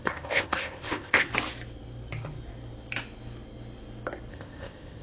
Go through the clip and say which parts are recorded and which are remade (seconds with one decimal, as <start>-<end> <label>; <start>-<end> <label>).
0.0-1.3 remade; 1.3-4.3 recorded; 4.3-5.0 remade